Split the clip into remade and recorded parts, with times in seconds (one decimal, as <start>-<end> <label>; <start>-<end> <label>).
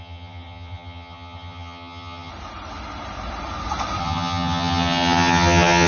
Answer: 0.0-2.3 remade; 2.3-4.0 recorded; 4.0-5.9 remade